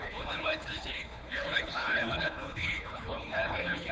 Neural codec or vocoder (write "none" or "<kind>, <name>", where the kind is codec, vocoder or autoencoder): codec, HILCodec